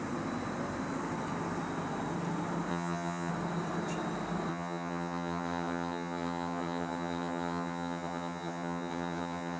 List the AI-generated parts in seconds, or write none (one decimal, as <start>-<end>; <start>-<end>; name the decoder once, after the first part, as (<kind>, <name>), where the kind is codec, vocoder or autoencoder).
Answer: 2.7-3.3 (vocoder, HiFi-GAN); 4.5-9.6